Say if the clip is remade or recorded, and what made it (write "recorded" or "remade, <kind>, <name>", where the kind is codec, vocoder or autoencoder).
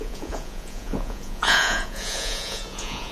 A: remade, vocoder, Vocos